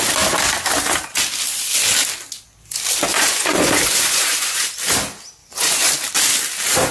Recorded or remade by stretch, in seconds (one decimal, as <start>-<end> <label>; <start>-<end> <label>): 0.0-3.1 recorded; 3.1-4.7 remade; 4.7-5.4 recorded; 5.4-5.9 remade; 5.9-6.9 recorded